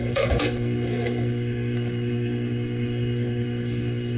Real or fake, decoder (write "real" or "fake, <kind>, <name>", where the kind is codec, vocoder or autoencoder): fake, codec, SNAC